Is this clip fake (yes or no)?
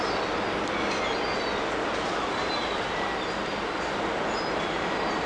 no